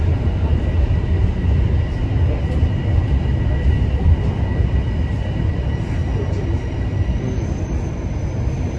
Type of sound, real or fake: real